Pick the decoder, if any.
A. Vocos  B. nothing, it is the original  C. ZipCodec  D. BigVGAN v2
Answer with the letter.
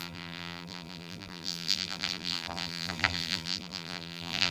D